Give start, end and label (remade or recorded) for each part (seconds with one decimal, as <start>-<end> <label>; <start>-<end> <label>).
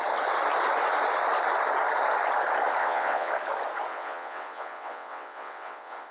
0.0-2.8 recorded; 2.8-3.3 remade; 3.3-3.9 recorded; 3.9-6.1 remade